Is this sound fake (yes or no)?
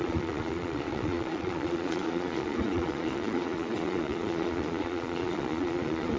yes